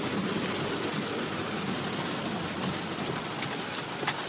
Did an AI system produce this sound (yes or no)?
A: no